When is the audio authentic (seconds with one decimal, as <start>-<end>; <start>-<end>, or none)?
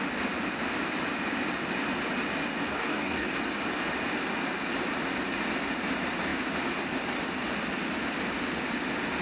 0.0-2.7; 3.3-9.2